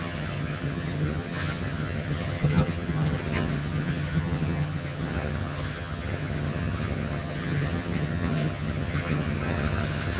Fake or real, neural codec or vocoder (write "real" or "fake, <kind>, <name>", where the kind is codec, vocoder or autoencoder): fake, vocoder, HiFi-GAN